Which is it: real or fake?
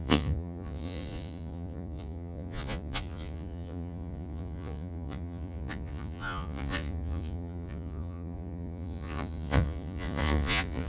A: fake